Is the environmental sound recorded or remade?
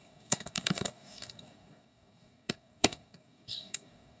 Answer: remade